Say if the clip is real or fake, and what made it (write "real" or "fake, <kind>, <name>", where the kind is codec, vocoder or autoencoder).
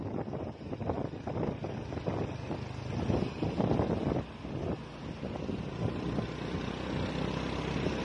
real